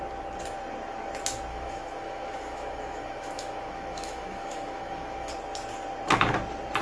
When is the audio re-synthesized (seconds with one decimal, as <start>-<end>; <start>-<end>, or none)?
1.5-5.3